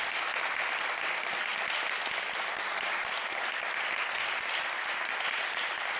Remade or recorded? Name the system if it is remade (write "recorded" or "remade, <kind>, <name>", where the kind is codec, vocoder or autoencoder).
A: recorded